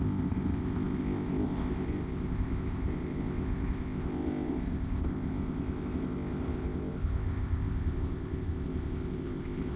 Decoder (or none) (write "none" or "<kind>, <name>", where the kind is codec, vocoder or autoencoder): codec, ZipCodec